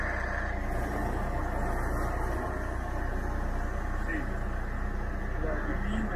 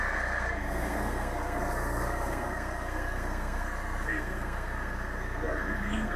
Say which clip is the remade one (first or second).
second